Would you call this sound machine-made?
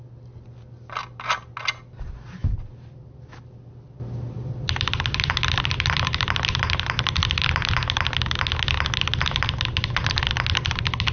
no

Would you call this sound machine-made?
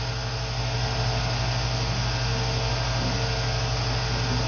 no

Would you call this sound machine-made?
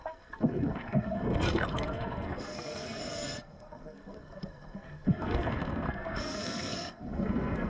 yes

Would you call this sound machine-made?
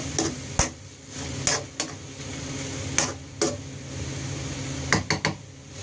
no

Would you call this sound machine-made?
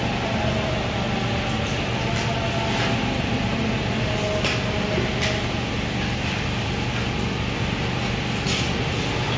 no